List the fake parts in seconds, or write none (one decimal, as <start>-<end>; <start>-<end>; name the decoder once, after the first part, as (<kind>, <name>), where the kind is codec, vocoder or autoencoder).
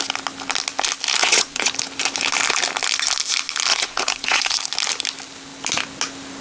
1.2-1.7 (vocoder, Vocos); 3.7-4.6